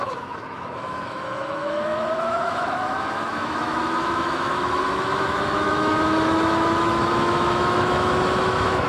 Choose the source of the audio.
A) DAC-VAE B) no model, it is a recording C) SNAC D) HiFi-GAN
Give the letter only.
A